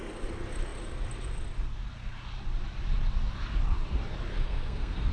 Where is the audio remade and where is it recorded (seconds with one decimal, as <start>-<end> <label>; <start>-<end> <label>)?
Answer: 0.0-4.3 recorded; 4.3-5.1 remade